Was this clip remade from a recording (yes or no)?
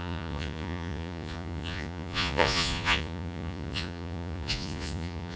yes